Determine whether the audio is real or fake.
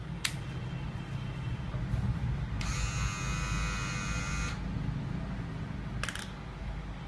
real